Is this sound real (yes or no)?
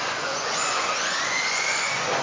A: no